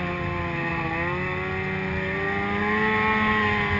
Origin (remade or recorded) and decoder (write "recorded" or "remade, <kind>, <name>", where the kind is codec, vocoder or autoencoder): recorded